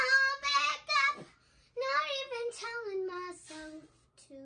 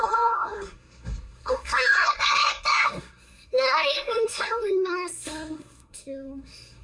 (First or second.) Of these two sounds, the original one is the first